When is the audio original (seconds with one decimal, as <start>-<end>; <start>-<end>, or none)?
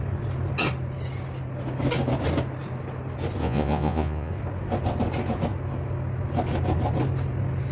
0.0-3.4; 4.3-7.7